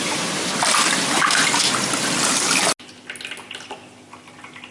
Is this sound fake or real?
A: real